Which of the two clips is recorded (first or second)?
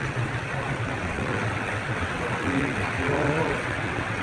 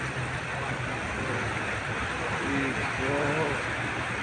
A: second